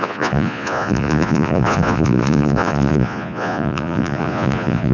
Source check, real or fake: fake